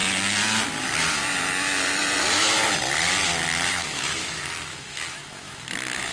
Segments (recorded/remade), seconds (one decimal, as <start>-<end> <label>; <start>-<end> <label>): 0.0-3.7 recorded; 3.7-6.1 remade